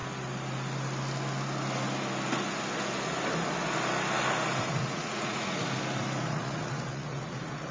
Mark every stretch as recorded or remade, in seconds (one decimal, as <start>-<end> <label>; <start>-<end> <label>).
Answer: 0.0-4.6 recorded; 4.6-5.6 remade; 5.6-6.2 recorded; 6.2-7.7 remade